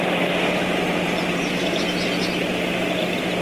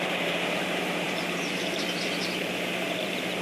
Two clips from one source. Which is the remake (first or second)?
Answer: second